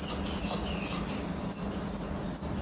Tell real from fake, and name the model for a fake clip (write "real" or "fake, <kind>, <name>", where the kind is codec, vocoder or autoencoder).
real